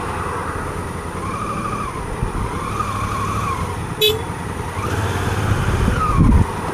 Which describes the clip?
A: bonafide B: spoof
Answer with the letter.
A